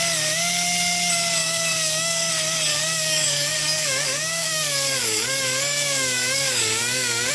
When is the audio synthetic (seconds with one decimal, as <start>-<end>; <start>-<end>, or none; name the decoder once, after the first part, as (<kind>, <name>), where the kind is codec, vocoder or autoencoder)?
1.4-2.3 (codec, DAC); 2.7-7.3